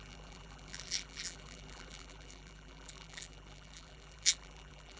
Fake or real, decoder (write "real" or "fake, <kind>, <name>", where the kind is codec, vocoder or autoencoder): fake, vocoder, BigVGAN v2